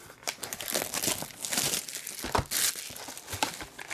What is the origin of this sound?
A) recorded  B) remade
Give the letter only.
A